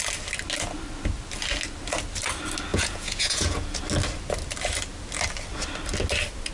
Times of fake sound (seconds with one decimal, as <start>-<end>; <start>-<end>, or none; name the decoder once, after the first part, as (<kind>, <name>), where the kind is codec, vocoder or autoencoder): 2.7-3.8 (vocoder, Vocos)